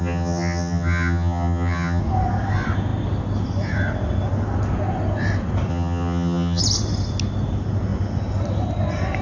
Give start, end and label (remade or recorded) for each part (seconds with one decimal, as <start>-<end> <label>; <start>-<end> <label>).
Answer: 0.0-2.0 remade; 2.0-5.7 recorded; 5.7-6.6 remade; 6.6-9.2 recorded